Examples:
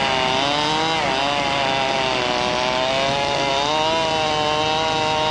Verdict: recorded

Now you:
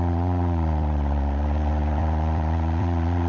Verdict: remade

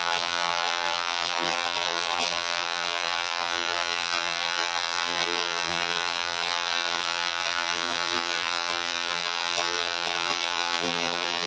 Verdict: remade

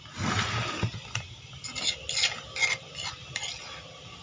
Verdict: recorded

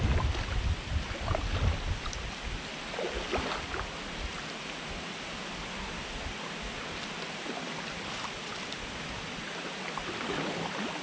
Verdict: recorded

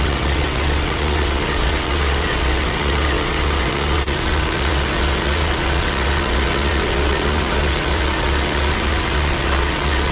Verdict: remade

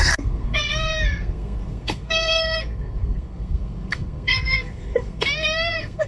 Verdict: remade